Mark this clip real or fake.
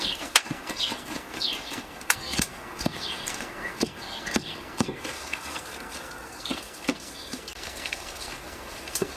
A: fake